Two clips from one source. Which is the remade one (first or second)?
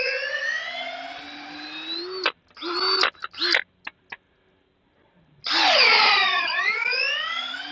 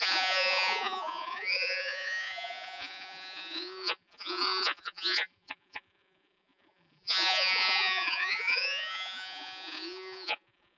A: second